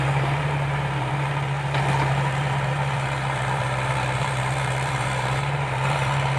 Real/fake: fake